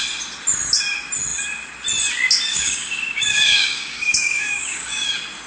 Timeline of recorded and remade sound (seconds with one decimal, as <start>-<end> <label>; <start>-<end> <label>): 0.0-2.5 recorded; 2.5-5.1 remade; 5.1-5.5 recorded